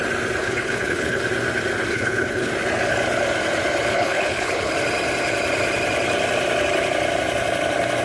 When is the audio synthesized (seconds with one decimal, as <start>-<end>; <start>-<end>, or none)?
0.4-1.2; 1.9-2.5; 3.9-4.7